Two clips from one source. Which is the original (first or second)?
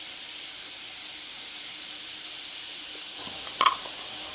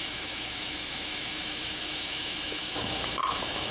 first